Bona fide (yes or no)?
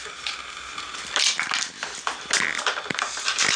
yes